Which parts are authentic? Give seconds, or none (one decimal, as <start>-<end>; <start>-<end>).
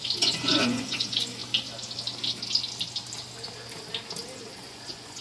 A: 1.4-4.5